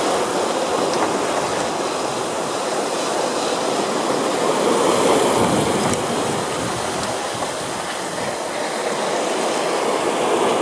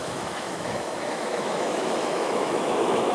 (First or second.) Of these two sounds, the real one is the first